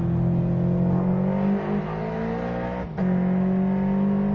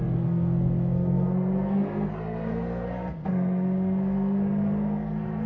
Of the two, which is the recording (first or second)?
first